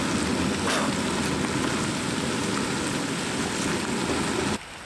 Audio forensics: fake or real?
real